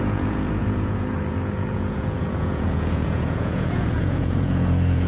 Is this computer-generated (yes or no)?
yes